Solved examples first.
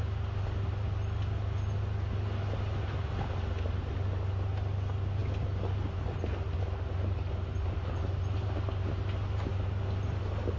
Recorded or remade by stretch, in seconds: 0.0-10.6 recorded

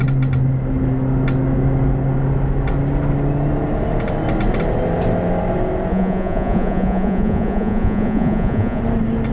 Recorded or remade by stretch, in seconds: 0.0-5.9 recorded; 5.9-8.8 remade; 8.8-9.3 recorded

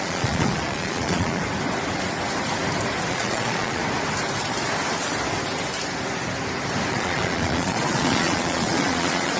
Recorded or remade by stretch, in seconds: 0.0-1.4 remade; 1.4-3.1 recorded; 3.1-3.8 remade; 3.8-6.9 recorded; 6.9-9.4 remade